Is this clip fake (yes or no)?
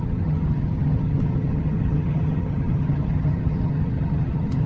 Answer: yes